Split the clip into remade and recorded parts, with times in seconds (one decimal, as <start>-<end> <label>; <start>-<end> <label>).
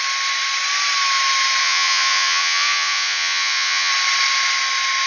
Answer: 0.0-1.6 recorded; 1.6-3.9 remade; 3.9-5.1 recorded